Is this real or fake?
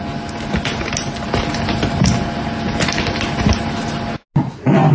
real